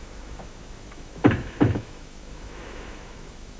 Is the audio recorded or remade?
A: remade